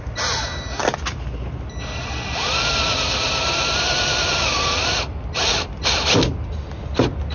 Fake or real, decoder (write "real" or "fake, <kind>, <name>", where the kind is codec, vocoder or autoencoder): real